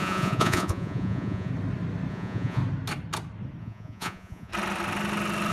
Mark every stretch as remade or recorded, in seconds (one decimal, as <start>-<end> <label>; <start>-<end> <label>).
0.0-1.5 remade; 1.5-2.1 recorded; 2.1-2.6 remade; 2.6-3.6 recorded; 3.6-4.5 remade; 4.5-5.5 recorded